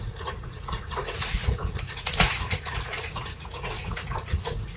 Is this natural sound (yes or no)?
no